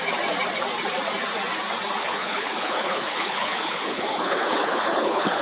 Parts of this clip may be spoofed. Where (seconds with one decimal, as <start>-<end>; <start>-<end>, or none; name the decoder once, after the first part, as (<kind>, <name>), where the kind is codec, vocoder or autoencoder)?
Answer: 2.0-5.4 (codec, HILCodec)